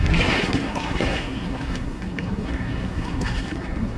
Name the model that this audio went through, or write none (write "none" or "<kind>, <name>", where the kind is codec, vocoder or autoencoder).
codec, SNAC